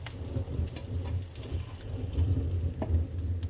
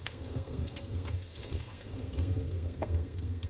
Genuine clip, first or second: first